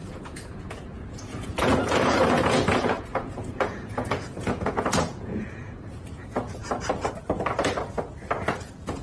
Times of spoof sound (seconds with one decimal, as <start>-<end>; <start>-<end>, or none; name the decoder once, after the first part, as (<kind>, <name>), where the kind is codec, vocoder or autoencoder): 0.0-6.6 (vocoder, Vocos); 8.5-9.0